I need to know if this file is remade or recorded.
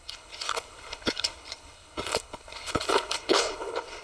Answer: remade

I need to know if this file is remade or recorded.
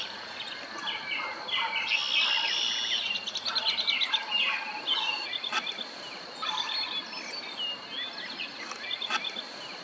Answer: recorded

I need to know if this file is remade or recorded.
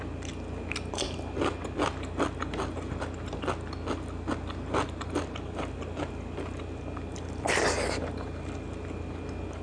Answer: recorded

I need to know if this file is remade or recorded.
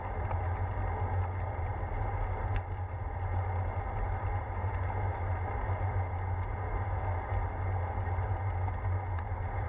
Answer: recorded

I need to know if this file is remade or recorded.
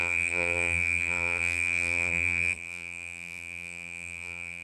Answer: remade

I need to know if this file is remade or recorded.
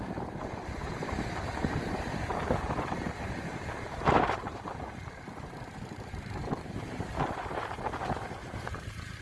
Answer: remade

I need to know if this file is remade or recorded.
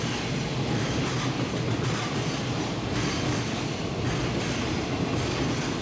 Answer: recorded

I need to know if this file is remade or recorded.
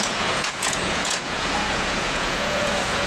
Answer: remade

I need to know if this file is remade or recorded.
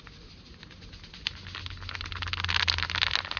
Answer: recorded